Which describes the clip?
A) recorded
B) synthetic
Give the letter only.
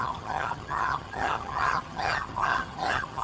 B